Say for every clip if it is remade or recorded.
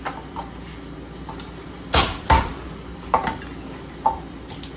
recorded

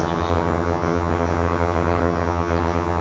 remade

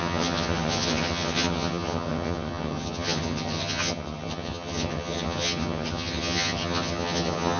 remade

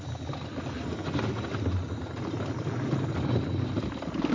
recorded